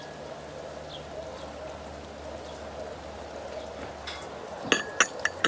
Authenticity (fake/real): real